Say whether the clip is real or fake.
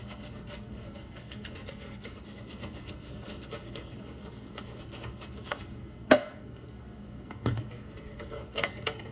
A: fake